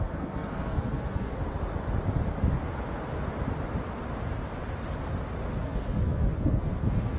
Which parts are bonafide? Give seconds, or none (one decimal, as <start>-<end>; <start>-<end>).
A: 1.3-5.6